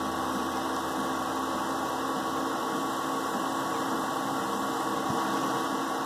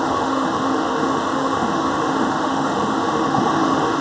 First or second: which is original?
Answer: first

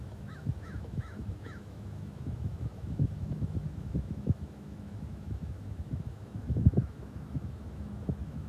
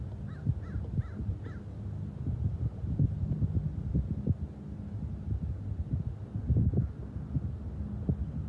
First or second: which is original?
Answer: second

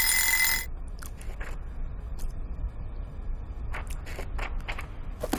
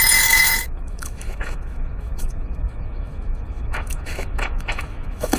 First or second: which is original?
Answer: first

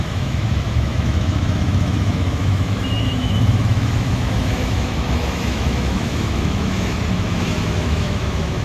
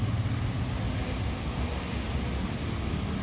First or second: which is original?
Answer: second